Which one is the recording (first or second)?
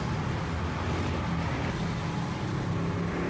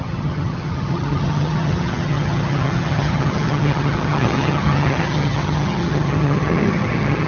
first